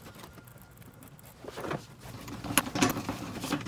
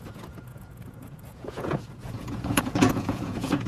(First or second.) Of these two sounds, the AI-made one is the second